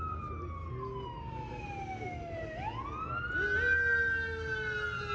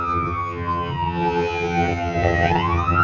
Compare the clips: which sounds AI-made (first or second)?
second